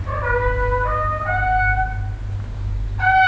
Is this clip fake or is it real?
real